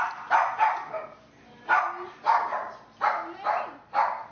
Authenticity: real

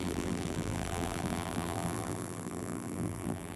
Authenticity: fake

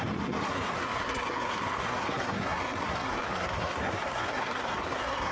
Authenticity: fake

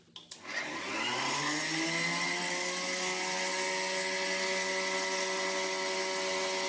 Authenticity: real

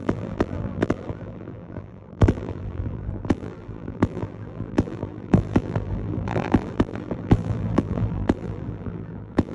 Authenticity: fake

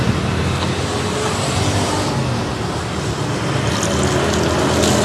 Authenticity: real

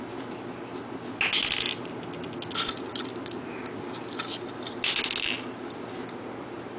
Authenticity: real